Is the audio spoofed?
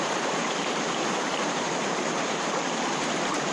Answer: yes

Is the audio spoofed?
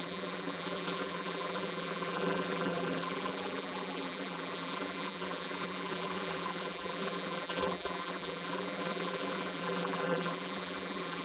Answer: yes